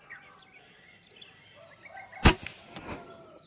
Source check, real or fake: real